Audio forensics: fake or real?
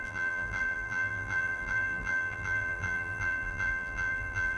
fake